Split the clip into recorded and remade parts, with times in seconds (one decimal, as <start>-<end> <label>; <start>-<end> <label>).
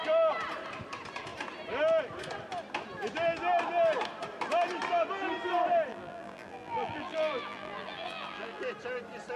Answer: 0.0-5.9 recorded; 5.9-8.6 remade; 8.6-9.4 recorded